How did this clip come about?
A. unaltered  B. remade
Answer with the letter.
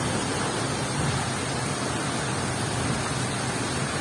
A